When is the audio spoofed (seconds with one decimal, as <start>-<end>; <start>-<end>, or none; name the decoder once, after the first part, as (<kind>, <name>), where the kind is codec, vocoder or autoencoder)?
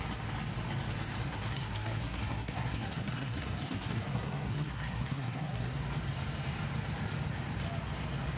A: 1.2-5.8 (codec, SNAC)